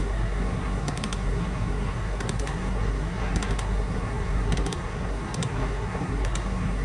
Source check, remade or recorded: remade